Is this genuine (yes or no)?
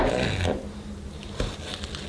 yes